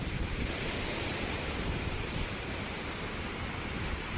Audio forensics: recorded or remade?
recorded